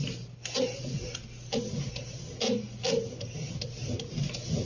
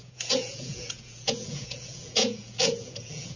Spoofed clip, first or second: second